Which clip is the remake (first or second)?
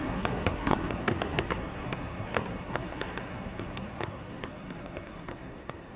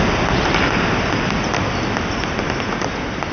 first